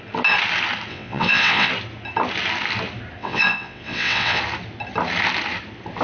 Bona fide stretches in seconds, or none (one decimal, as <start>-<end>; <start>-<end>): 0.0-0.9; 1.7-3.2; 4.4-6.0